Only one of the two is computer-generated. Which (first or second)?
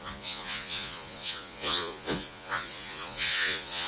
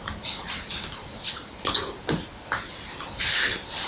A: first